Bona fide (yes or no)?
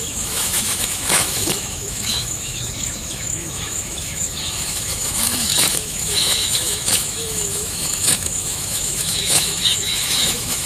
no